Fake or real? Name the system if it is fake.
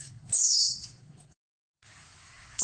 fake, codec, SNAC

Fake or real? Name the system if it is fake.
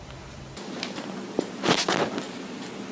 real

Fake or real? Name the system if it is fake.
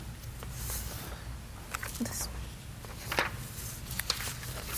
real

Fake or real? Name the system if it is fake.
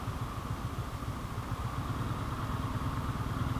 real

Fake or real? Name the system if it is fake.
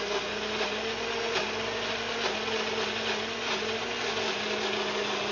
real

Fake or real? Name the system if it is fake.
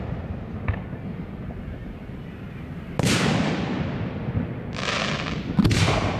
real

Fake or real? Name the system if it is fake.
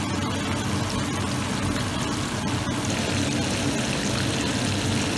real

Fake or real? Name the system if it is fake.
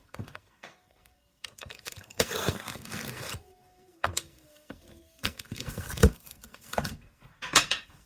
fake, codec, SNAC